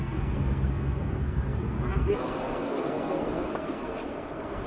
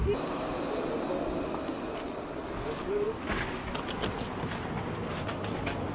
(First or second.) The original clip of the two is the second